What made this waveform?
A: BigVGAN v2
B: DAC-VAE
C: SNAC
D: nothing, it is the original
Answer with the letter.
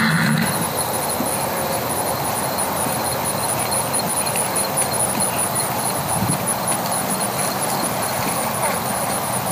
D